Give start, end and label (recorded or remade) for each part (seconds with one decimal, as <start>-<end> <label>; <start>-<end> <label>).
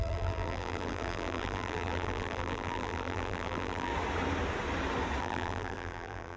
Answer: 0.0-3.9 remade; 3.9-5.2 recorded; 5.2-6.4 remade